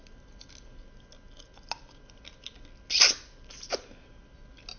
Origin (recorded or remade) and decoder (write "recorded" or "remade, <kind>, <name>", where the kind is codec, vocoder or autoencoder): recorded